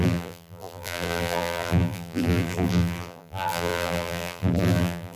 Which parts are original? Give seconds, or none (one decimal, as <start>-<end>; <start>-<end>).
none